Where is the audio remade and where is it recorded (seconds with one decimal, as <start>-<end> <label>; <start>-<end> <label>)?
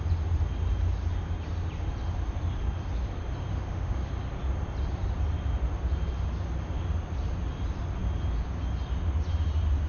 0.0-3.5 recorded; 3.5-4.1 remade; 4.1-9.9 recorded